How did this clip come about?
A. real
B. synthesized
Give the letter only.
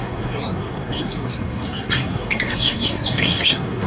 B